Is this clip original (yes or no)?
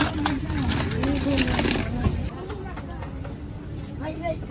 yes